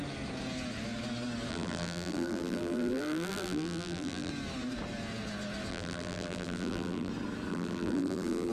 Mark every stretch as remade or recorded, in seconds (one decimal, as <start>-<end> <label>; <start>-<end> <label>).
0.0-1.5 recorded; 1.5-4.3 remade; 4.3-5.7 recorded; 5.7-7.1 remade; 7.1-7.5 recorded; 7.5-8.5 remade